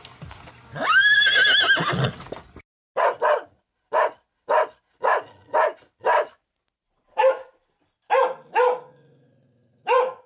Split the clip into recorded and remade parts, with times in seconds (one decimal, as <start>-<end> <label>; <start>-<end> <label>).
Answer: 0.0-6.1 recorded; 6.1-7.3 remade; 7.3-10.3 recorded